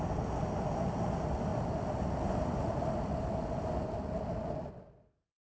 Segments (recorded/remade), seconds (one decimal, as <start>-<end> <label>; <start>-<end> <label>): 0.0-5.4 recorded